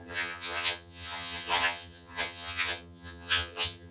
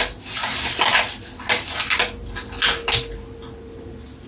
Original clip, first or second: second